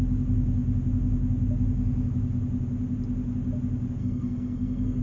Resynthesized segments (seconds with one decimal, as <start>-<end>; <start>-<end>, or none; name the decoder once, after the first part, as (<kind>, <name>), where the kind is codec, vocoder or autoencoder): 4.0-5.0 (codec, SNAC)